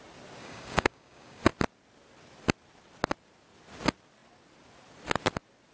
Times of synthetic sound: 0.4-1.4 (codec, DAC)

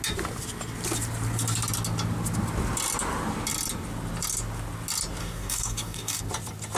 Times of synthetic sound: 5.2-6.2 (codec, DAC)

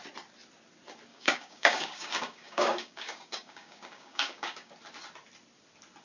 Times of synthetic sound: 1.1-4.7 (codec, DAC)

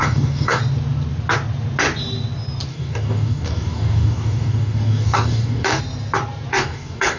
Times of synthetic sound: 0.0-0.6 (codec, DAC); 2.7-5.8; 6.5-7.2

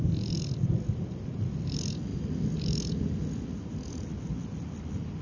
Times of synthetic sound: none

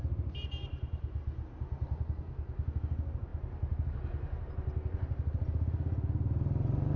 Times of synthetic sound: none